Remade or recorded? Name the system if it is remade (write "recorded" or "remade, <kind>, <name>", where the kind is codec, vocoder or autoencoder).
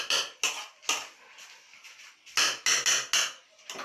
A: recorded